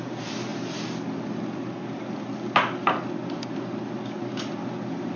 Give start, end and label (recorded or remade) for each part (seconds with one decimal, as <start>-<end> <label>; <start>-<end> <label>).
0.0-5.2 recorded